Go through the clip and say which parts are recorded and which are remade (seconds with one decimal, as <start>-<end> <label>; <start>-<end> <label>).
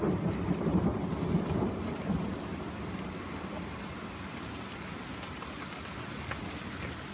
0.0-7.1 recorded